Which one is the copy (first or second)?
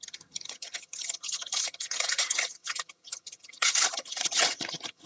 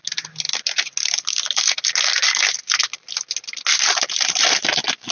first